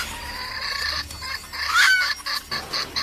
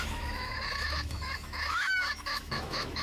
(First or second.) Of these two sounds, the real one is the first